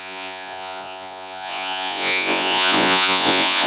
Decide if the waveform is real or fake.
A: fake